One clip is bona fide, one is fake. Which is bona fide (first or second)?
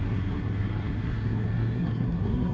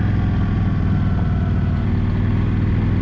second